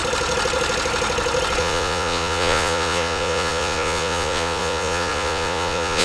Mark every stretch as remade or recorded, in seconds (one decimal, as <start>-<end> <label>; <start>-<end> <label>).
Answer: 0.0-1.6 recorded; 1.6-6.0 remade

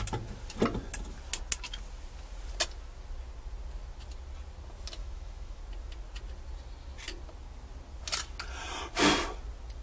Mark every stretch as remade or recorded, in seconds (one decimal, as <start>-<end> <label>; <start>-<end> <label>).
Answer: 0.0-5.0 recorded; 5.0-5.6 remade; 5.6-9.8 recorded

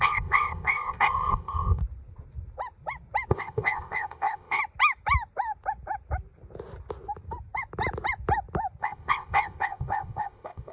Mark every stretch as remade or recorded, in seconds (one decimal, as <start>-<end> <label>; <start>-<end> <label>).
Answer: 0.0-1.8 remade; 1.8-3.3 recorded; 3.3-4.6 remade; 4.6-8.8 recorded; 8.8-10.7 remade